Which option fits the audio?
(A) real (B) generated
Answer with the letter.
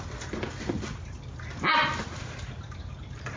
A